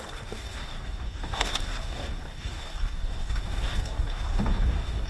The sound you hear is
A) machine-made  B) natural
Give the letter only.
A